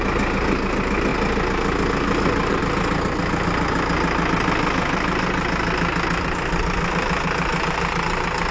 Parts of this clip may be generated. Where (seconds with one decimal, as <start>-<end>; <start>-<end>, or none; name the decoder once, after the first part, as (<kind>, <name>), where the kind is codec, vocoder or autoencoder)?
none